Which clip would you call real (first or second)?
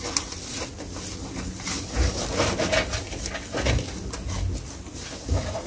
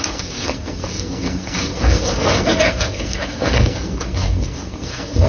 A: first